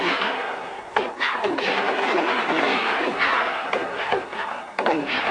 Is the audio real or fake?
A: fake